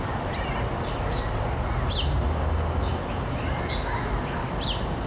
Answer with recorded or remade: recorded